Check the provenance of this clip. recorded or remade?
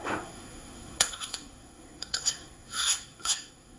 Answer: remade